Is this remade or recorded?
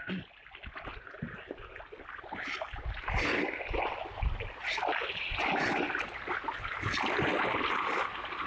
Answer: recorded